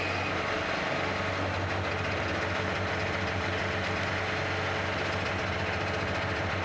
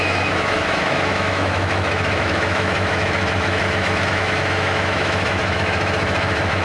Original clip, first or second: first